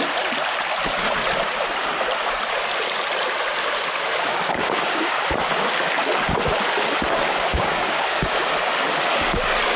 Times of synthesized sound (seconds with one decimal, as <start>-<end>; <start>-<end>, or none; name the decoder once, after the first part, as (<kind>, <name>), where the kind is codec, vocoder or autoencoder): 4.1-5.3 (codec, DAC); 7.5-8.4